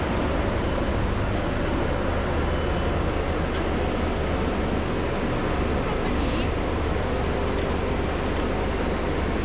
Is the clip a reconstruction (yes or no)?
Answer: no